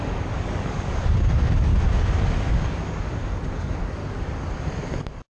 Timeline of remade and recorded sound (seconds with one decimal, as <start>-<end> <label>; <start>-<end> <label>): 0.0-1.7 remade; 1.7-2.5 recorded; 2.5-4.0 remade; 4.0-4.8 recorded; 4.8-5.4 remade

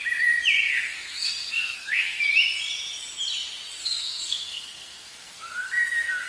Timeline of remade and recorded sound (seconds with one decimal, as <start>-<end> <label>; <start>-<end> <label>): 0.0-0.7 recorded; 0.7-2.2 remade; 2.2-3.8 recorded; 3.8-6.3 remade